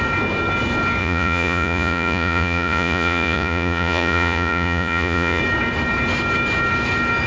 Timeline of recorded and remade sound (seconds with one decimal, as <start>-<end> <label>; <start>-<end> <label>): 0.0-1.0 recorded; 1.0-5.4 remade; 5.4-7.3 recorded